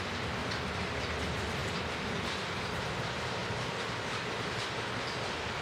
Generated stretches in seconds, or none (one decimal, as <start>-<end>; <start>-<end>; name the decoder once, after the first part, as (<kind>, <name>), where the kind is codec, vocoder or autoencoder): 0.4-1.0 (vocoder, BigVGAN v2); 1.6-2.1; 3.4-4.6